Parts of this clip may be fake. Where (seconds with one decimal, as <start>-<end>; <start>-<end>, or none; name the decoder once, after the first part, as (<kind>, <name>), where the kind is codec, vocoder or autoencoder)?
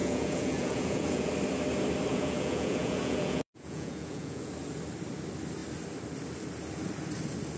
0.0-1.3 (vocoder, Vocos); 2.1-4.5